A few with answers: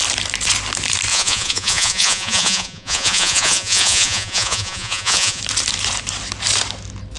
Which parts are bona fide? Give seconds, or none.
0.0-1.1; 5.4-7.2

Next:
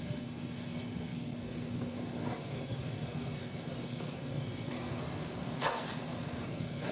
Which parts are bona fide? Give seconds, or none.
none

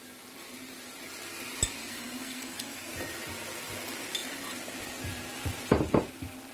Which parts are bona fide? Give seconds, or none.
0.0-1.8; 2.9-6.5

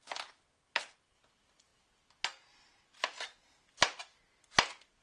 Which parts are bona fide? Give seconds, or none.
0.0-5.0

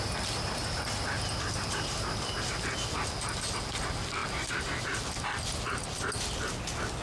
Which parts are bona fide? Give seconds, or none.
0.0-7.0

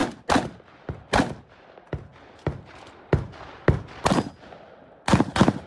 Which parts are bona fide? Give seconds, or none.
0.0-5.7

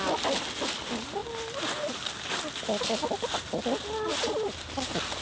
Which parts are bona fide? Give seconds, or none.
0.0-4.1; 4.7-5.2